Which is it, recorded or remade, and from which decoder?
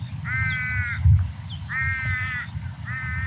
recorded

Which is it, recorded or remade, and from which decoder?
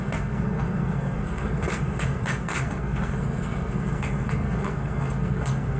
remade, codec, SNAC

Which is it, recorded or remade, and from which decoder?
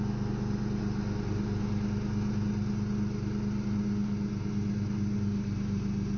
recorded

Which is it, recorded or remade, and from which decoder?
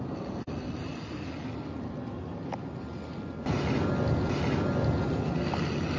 recorded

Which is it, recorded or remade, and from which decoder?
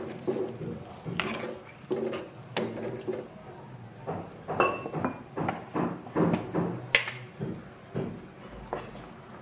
recorded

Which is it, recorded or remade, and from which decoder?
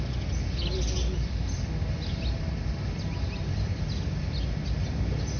recorded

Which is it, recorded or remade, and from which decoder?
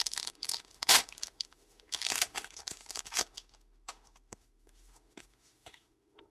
remade, autoencoder, DAC-VAE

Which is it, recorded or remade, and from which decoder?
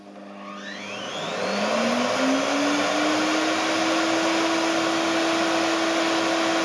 recorded